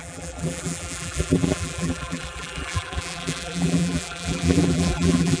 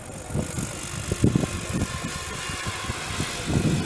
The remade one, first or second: first